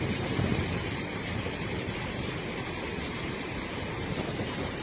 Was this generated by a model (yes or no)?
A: yes